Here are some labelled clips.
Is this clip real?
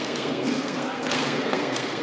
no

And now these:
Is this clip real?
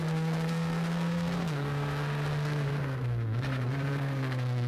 no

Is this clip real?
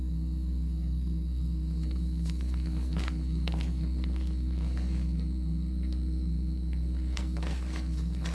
no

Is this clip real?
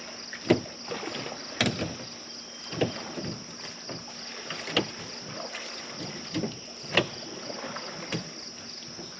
yes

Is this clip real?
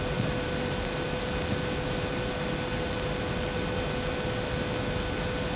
yes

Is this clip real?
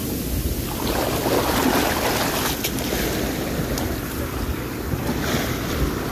yes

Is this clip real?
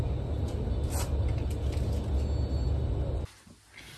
yes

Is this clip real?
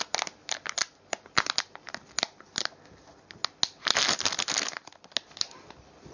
yes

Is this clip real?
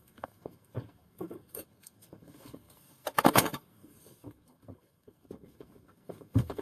no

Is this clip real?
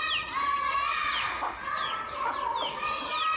yes